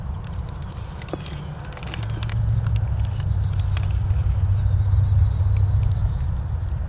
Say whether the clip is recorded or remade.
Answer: recorded